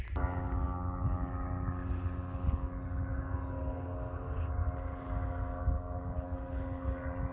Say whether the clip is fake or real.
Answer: real